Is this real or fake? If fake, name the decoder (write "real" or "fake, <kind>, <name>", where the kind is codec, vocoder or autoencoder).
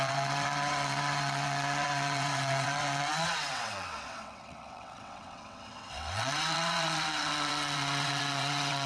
fake, vocoder, WaveNeXt